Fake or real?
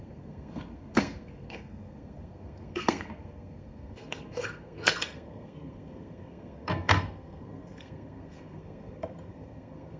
fake